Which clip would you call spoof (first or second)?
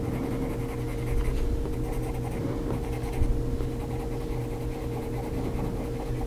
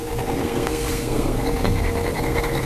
second